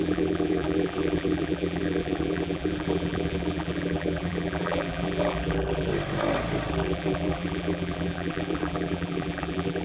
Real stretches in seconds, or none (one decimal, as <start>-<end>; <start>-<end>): 5.9-6.7